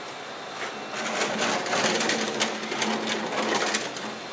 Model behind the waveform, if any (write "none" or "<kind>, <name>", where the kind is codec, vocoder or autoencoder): none